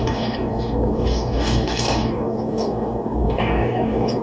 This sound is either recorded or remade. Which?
remade